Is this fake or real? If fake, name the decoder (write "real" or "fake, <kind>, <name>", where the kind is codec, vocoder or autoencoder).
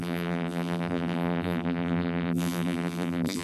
fake, vocoder, BigVGAN v2